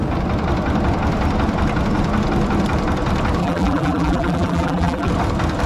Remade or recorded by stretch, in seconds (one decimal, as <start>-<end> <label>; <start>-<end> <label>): 0.0-3.4 recorded; 3.4-5.1 remade; 5.1-5.7 recorded